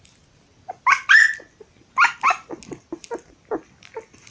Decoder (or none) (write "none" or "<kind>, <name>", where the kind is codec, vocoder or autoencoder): none